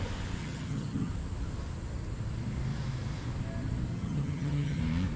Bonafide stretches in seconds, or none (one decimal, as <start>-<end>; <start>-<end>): 0.0-0.4; 1.1-3.9; 4.8-5.2